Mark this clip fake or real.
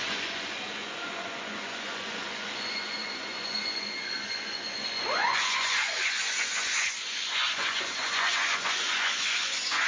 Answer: fake